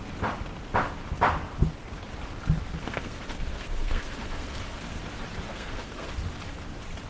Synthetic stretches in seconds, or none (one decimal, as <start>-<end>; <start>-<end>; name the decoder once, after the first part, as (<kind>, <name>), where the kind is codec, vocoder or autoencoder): 2.8-5.0 (codec, SNAC); 5.5-6.1